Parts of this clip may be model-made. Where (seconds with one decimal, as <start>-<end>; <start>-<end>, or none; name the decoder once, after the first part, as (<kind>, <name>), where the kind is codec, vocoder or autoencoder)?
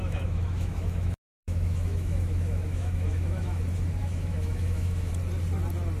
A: 0.0-3.6 (autoencoder, DAC-VAE); 4.0-5.1